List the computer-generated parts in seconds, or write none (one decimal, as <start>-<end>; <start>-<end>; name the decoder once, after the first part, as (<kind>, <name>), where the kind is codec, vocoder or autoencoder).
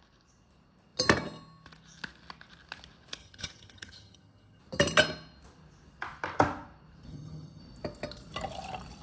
3.2-4.6 (vocoder, HiFi-GAN); 7.1-7.6